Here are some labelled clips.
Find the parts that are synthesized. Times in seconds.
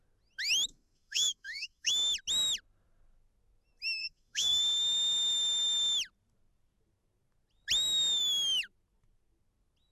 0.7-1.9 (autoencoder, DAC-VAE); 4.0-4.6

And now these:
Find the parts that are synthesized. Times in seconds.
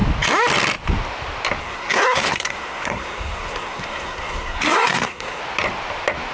1.6-5.4 (codec, SNAC)